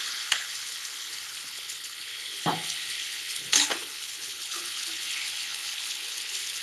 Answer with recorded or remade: remade